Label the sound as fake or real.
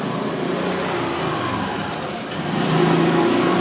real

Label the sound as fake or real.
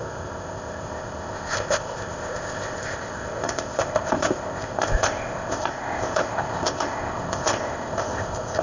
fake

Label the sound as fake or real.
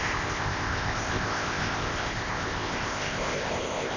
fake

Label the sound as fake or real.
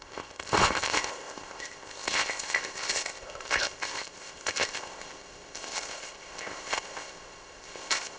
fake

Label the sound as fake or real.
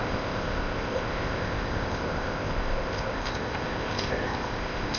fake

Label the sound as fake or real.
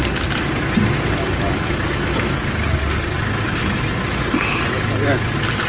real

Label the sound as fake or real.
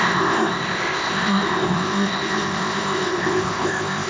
fake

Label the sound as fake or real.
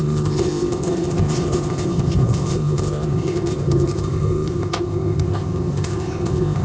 fake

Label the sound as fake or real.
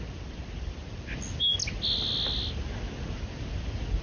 real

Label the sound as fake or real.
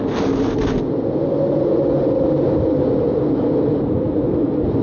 real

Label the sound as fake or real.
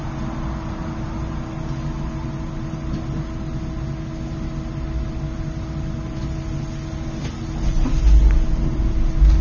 real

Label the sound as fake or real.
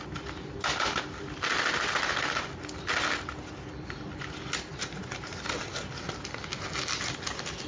real